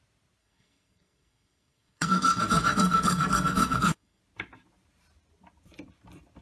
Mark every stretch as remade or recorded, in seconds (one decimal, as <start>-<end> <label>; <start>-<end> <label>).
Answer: 0.0-0.4 recorded; 0.4-4.2 remade; 4.2-6.4 recorded